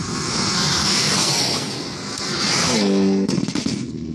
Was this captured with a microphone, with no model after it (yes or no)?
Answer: no